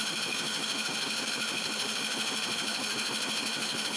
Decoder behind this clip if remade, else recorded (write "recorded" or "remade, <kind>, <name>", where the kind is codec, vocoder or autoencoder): remade, autoencoder, DAC-VAE